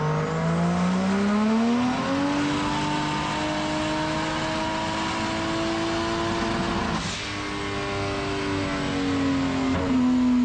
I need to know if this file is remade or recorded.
recorded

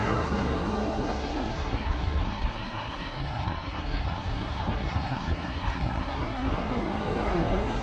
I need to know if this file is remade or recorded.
remade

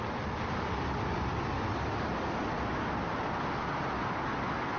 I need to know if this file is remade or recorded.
recorded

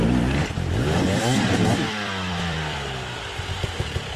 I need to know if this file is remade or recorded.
remade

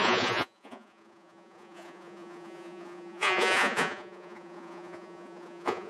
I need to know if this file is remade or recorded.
remade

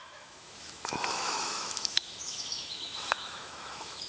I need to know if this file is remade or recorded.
remade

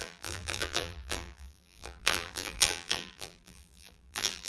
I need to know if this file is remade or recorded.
remade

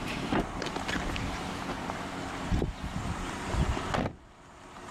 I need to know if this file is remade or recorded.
remade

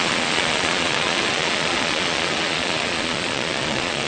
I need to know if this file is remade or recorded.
remade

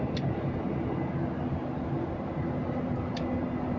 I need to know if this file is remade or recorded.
recorded